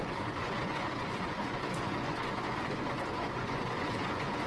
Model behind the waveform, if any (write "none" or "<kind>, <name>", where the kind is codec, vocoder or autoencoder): vocoder, Vocos